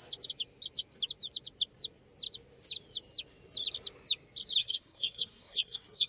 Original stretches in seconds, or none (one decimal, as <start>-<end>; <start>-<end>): 0.0-4.6